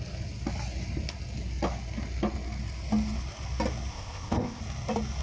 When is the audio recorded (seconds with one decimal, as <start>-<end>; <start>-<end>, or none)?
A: 0.0-3.9; 4.6-5.2